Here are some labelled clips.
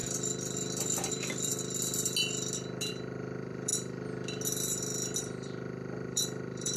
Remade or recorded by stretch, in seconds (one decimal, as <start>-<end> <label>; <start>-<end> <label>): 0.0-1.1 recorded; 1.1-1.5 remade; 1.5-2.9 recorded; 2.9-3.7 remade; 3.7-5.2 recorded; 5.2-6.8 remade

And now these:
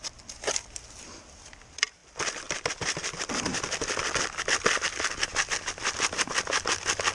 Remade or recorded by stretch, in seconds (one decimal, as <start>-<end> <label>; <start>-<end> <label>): 0.0-2.0 recorded; 2.0-4.4 remade; 4.4-5.3 recorded; 5.3-6.5 remade; 6.5-7.1 recorded

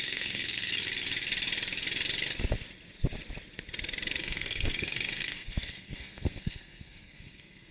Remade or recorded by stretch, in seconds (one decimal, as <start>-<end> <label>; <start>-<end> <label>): 0.0-0.7 remade; 0.7-4.2 recorded; 4.2-7.7 remade

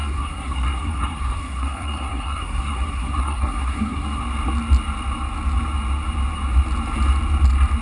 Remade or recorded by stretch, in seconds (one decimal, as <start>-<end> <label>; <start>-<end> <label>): 0.0-4.2 remade; 4.2-7.8 recorded

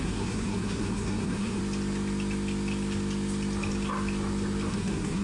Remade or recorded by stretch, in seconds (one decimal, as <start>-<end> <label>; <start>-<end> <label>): 0.0-1.6 remade; 1.6-4.7 recorded; 4.7-5.2 remade